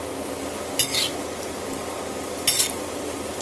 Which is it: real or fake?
real